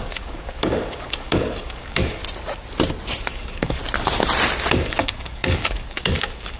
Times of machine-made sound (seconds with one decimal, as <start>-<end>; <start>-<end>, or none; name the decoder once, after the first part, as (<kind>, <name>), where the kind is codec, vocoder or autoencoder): 0.0-2.2 (codec, DAC); 3.3-3.8; 4.7-6.6